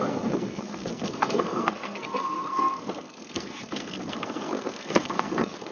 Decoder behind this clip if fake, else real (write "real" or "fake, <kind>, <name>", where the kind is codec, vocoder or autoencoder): fake, codec, SNAC